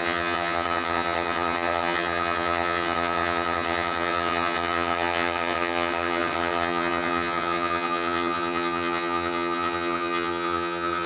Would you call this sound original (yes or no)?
no